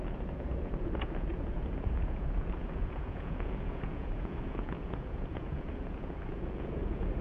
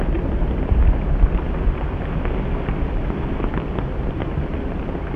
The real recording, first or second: second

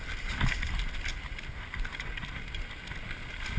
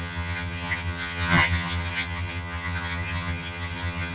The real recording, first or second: first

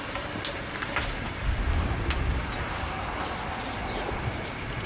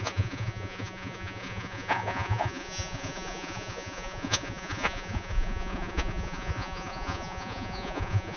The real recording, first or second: first